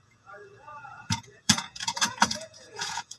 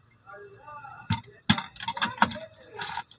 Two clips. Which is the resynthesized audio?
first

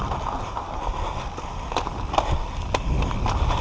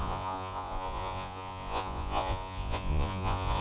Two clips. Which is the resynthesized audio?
second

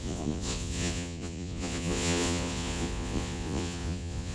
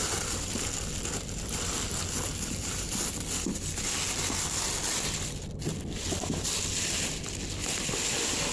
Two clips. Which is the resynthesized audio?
first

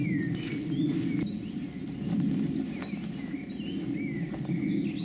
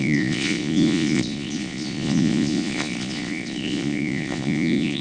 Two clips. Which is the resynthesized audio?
second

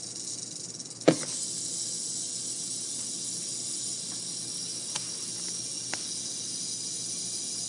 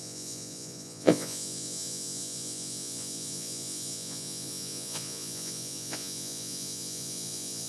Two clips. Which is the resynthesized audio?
second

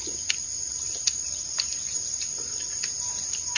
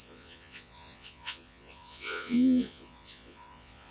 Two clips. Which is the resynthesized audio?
second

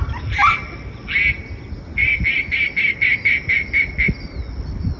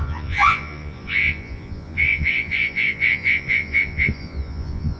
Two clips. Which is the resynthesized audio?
second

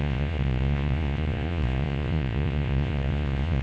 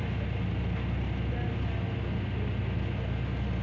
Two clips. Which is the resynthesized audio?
first